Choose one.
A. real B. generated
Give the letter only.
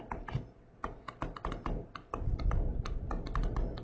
A